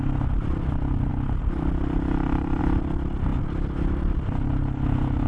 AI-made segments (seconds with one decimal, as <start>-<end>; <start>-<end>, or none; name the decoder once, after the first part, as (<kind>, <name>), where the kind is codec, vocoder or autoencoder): none